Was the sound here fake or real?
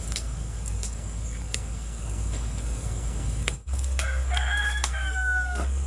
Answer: fake